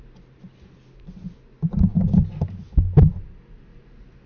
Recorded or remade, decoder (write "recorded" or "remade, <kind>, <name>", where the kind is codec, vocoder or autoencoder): recorded